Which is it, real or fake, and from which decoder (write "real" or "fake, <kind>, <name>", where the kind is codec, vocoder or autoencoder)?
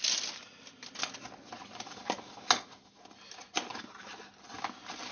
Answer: real